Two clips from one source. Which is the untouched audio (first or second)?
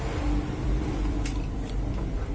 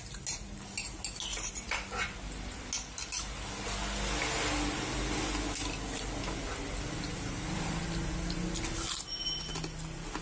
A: second